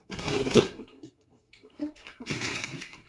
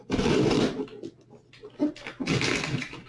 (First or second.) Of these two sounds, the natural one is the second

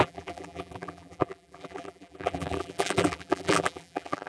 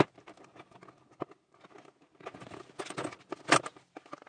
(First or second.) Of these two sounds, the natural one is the second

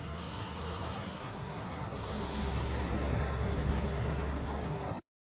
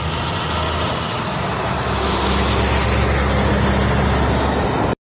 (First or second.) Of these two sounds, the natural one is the second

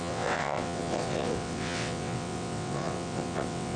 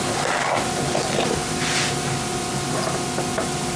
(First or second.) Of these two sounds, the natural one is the second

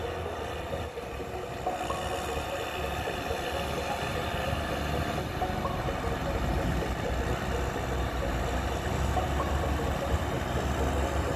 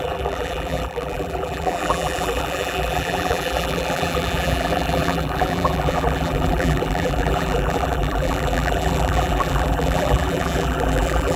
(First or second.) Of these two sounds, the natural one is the first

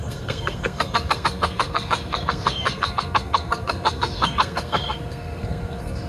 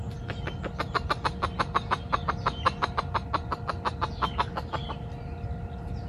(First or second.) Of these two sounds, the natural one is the second